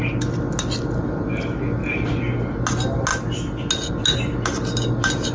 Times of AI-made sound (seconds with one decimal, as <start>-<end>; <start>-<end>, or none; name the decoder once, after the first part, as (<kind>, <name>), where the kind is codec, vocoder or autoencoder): none